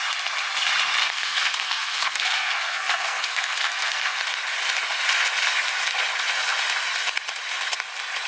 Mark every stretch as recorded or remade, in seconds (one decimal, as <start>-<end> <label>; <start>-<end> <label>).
0.0-1.0 recorded; 1.0-4.2 remade; 4.2-8.3 recorded

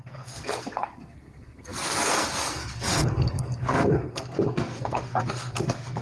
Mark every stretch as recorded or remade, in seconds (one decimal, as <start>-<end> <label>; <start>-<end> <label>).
0.0-6.0 remade

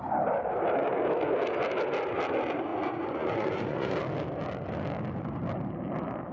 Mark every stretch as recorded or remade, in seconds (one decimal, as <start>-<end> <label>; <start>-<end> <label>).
0.0-2.7 recorded; 2.7-4.0 remade; 4.0-6.3 recorded

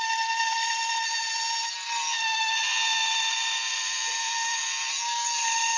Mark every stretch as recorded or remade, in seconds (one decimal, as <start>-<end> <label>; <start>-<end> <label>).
0.0-3.0 recorded; 3.0-4.6 remade; 4.6-5.8 recorded

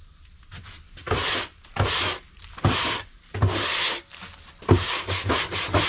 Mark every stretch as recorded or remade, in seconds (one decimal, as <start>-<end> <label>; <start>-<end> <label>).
0.0-5.9 recorded

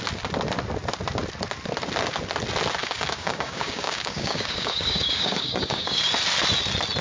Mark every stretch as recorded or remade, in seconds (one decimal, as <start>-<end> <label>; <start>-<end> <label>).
0.0-2.8 recorded; 2.8-6.0 remade; 6.0-7.0 recorded

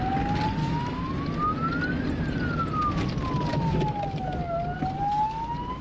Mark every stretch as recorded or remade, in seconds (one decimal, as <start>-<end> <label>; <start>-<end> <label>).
0.0-0.6 recorded; 0.6-1.1 remade; 1.1-3.5 recorded; 3.5-4.0 remade; 4.0-5.8 recorded

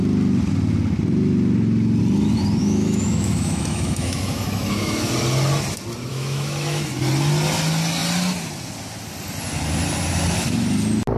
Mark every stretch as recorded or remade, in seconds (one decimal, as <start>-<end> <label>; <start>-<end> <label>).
0.0-2.6 recorded; 2.6-5.1 remade; 5.1-6.1 recorded; 6.1-6.9 remade; 6.9-11.2 recorded